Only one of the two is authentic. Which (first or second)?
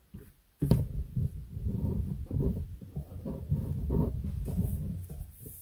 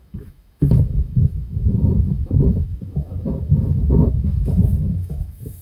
first